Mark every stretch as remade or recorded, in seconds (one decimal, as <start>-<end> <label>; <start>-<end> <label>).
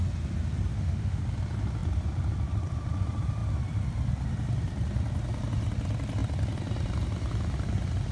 0.0-0.7 recorded; 0.7-1.2 remade; 1.2-8.1 recorded